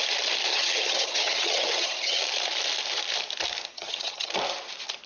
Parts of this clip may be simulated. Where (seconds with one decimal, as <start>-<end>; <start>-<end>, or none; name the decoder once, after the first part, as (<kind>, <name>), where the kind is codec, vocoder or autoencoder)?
0.5-2.2 (vocoder, HiFi-GAN); 3.7-4.3